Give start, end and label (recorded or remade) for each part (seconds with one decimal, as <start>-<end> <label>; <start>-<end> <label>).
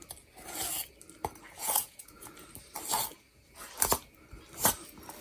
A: 0.0-1.6 recorded; 1.6-2.3 remade; 2.3-5.2 recorded